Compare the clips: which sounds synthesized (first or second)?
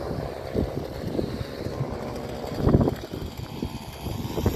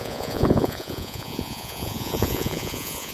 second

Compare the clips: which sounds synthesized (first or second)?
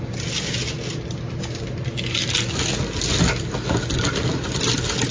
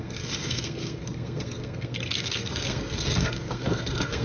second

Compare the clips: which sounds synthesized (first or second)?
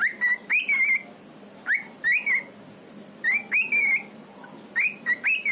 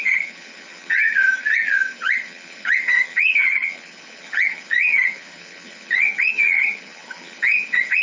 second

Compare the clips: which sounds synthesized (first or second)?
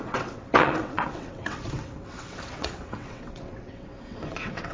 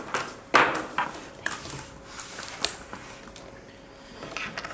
first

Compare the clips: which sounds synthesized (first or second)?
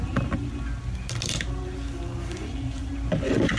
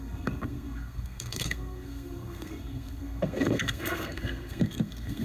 second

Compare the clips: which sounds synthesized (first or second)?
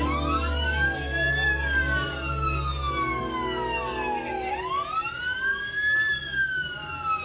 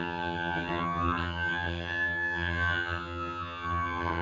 second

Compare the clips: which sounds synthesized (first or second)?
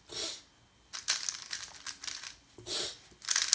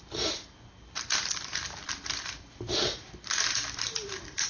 second